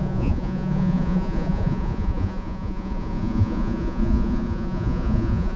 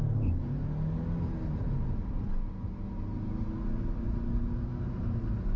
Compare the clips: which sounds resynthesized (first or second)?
first